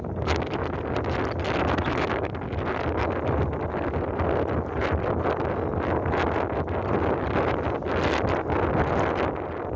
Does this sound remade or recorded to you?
recorded